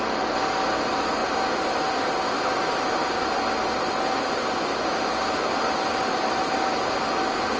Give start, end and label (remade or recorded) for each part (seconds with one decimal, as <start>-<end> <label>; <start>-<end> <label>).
0.0-7.6 recorded